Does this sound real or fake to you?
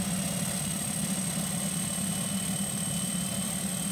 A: real